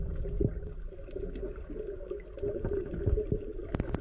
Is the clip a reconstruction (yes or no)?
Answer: no